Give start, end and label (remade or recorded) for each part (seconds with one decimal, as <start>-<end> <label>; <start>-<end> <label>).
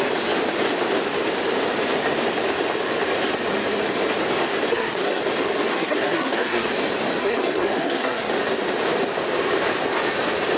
0.0-4.7 recorded; 4.7-5.2 remade; 5.2-5.7 recorded; 5.7-6.7 remade; 6.7-7.2 recorded; 7.2-8.3 remade; 8.3-10.6 recorded